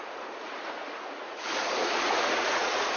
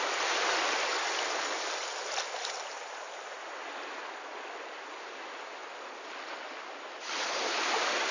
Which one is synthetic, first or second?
first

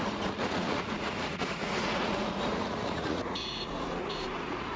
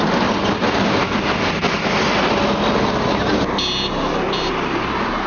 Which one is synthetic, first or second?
first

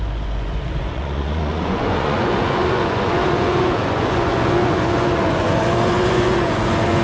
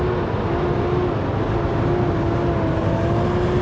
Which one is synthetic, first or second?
first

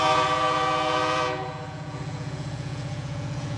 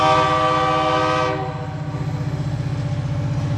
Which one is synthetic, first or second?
first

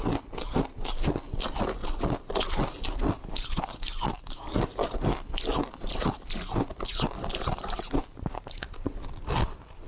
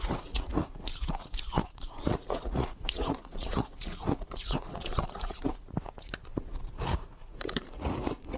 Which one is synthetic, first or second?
second